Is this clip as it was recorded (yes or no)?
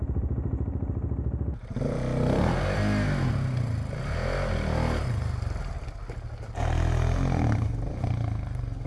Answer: yes